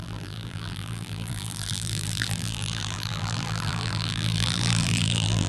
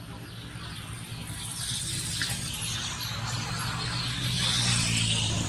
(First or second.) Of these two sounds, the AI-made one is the first